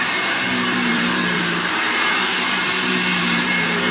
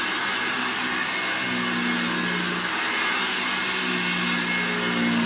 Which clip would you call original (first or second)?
second